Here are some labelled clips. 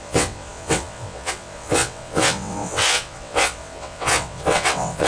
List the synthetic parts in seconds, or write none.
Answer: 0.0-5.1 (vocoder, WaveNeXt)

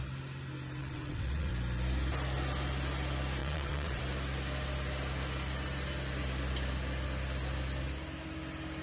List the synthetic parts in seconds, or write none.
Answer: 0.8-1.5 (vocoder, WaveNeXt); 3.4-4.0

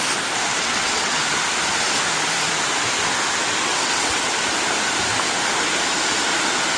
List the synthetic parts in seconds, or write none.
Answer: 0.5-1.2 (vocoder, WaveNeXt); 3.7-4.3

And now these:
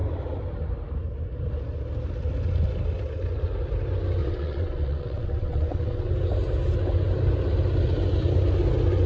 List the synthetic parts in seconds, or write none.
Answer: 4.2-6.1 (vocoder, WaveNeXt)

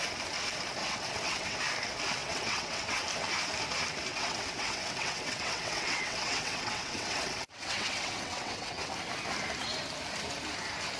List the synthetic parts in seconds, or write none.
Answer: 0.8-1.6 (vocoder, WaveNeXt); 2.2-3.0; 4.1-8.9